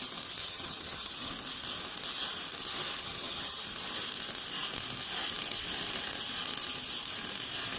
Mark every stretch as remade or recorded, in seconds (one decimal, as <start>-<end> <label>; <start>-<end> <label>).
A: 0.0-0.4 recorded; 0.4-1.3 remade; 1.3-3.0 recorded; 3.0-3.6 remade; 3.6-7.8 recorded